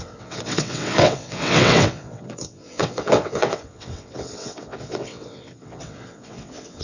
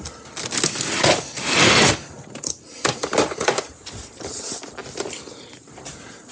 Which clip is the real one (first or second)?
second